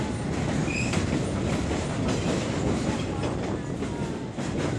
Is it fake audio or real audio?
real